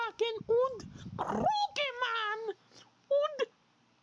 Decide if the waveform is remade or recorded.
recorded